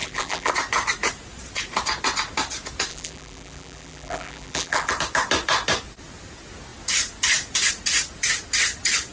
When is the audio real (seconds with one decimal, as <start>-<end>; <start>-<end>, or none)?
0.5-2.9; 4.9-9.1